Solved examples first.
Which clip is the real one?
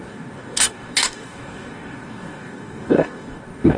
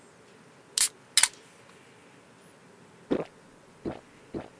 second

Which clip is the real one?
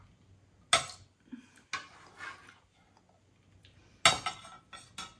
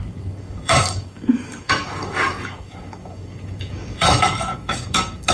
first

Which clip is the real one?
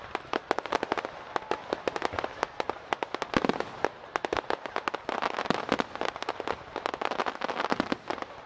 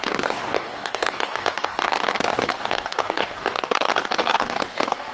first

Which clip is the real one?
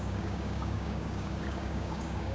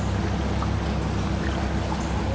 second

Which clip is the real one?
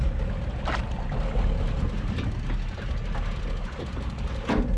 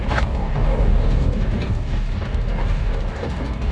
first